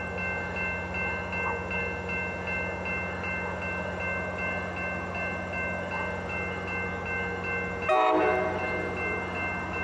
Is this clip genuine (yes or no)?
yes